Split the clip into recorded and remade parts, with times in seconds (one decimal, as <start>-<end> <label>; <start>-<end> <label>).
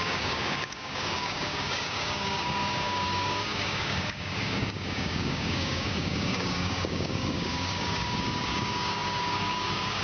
0.0-10.0 remade